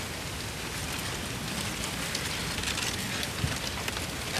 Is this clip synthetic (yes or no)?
no